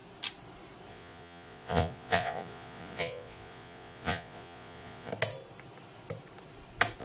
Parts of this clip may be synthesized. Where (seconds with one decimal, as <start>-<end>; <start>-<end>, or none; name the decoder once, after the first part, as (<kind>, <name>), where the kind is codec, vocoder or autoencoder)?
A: 0.9-5.1 (vocoder, Vocos)